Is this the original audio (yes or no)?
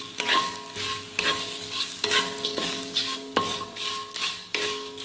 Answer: no